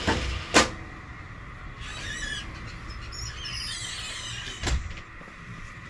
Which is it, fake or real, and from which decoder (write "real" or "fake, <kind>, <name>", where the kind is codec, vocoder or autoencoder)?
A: real